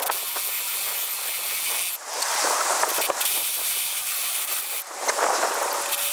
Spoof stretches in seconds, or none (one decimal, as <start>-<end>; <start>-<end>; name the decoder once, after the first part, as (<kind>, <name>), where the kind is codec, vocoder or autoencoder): 2.0-4.6 (vocoder, BigVGAN v2)